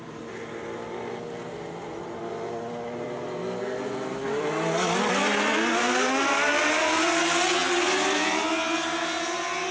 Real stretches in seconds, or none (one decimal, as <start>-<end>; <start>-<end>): 0.0-9.7